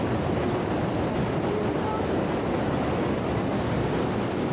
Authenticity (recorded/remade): recorded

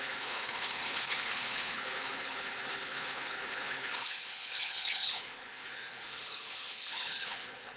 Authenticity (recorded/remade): remade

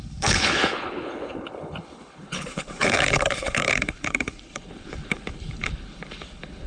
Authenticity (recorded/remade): remade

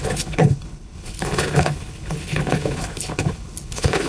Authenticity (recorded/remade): remade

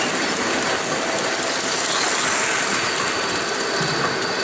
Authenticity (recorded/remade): recorded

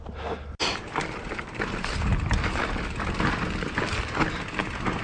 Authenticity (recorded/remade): recorded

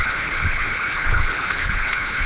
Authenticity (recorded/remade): remade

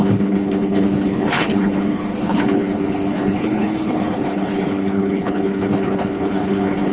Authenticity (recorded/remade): remade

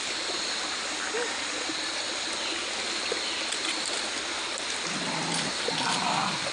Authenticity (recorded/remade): recorded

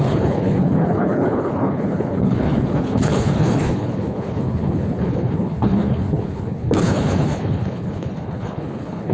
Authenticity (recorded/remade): remade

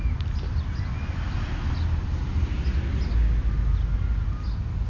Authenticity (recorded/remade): recorded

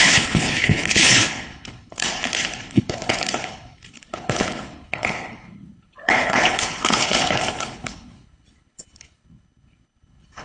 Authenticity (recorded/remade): remade